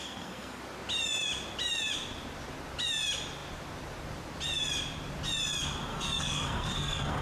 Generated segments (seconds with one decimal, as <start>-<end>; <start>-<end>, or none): 0.0-0.6; 5.9-7.2